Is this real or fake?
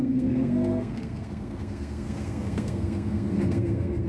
fake